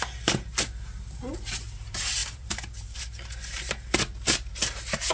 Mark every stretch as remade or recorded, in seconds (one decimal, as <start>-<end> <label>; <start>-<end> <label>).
0.0-2.2 recorded; 2.2-3.0 remade; 3.0-5.1 recorded